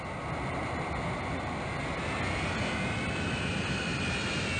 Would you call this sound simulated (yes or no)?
no